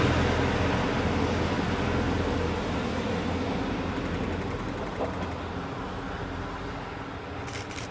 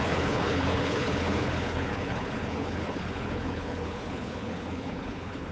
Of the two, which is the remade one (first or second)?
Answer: second